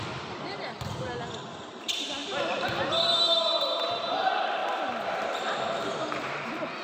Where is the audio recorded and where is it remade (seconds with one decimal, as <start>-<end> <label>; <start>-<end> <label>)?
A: 0.0-6.8 recorded